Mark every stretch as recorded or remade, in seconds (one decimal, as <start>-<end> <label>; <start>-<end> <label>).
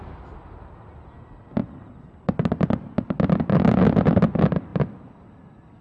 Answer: 0.0-5.8 recorded